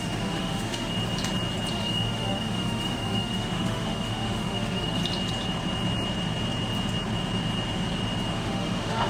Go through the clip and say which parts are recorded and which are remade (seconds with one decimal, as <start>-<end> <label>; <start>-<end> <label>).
0.0-0.9 remade; 0.9-1.7 recorded; 1.7-5.0 remade; 5.0-8.3 recorded; 8.3-9.1 remade